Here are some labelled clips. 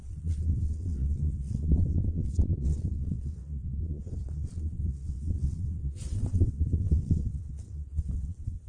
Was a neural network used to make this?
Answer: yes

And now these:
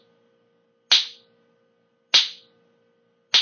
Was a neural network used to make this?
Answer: no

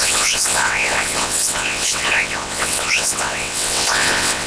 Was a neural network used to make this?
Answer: yes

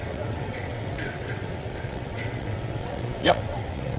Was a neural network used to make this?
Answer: yes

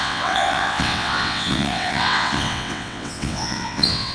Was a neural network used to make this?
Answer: yes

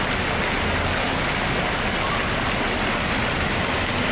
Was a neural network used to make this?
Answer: no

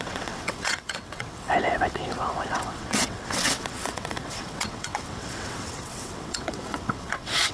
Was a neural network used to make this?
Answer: yes